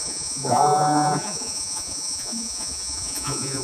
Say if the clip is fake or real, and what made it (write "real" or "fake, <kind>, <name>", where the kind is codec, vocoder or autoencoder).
fake, vocoder, Vocos